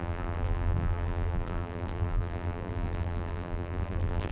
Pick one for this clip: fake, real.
fake